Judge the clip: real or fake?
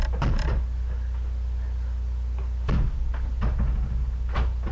real